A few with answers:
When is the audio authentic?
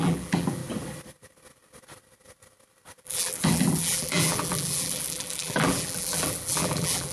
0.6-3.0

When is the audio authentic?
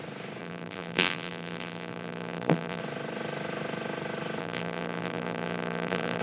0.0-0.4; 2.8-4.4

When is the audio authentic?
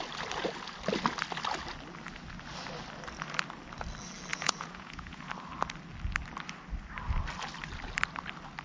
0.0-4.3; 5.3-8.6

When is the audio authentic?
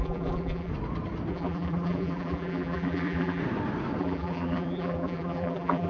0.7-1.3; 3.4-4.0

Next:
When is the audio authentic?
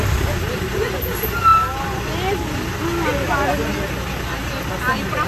0.0-5.3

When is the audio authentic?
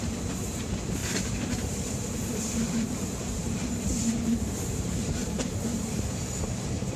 none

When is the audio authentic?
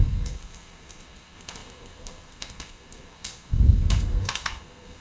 none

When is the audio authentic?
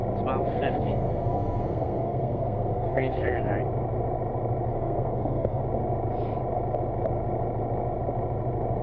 0.0-0.4; 3.6-4.7; 5.6-8.8